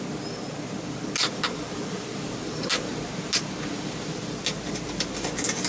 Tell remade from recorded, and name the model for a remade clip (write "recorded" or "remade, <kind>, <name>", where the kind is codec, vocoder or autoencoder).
recorded